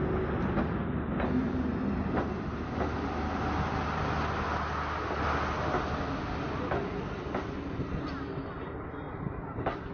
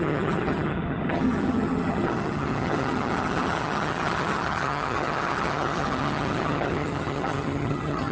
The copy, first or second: second